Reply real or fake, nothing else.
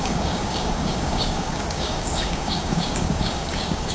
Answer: fake